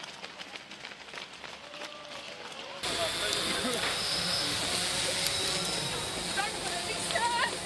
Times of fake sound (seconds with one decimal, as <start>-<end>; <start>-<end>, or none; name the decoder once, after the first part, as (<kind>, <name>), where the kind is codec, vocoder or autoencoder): 3.9-4.6 (autoencoder, DAC-VAE)